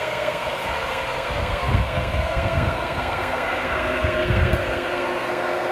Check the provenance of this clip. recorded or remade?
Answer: remade